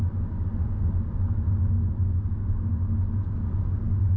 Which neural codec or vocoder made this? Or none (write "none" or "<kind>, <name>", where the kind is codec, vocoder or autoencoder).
none